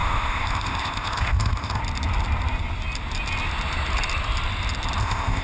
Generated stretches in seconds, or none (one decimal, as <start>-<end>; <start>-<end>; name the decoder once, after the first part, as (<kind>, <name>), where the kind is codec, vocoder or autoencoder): 0.0-1.8 (codec, ZipCodec); 5.0-5.4